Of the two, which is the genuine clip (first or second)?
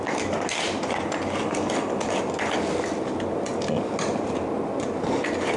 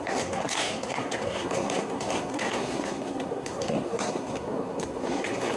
first